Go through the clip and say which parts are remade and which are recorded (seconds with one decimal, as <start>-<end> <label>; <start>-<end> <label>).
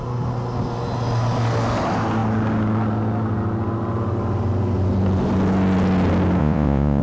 0.0-6.4 recorded; 6.4-7.0 remade